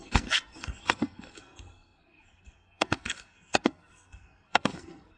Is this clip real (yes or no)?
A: no